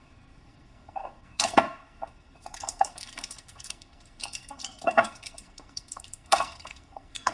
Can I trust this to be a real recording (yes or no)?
no